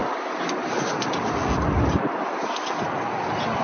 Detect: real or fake real